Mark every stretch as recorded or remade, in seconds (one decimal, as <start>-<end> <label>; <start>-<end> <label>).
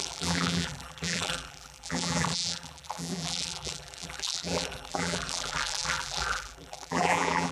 0.0-7.5 remade